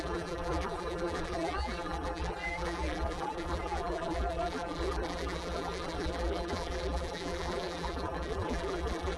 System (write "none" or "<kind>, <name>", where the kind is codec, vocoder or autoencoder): vocoder, BigVGAN v2